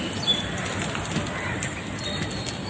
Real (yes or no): yes